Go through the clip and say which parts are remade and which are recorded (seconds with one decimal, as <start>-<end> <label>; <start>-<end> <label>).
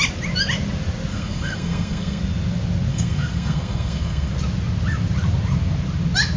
0.0-1.1 recorded; 1.1-2.2 remade; 2.2-2.9 recorded; 2.9-4.3 remade; 4.3-6.4 recorded